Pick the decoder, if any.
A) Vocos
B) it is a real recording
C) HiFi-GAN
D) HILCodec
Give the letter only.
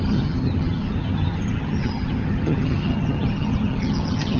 C